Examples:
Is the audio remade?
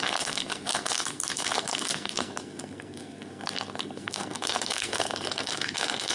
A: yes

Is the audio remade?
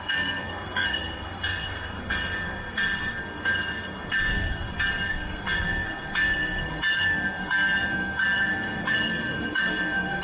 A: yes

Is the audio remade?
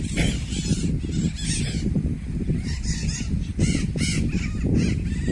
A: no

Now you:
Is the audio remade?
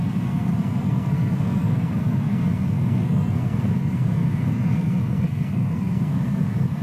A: yes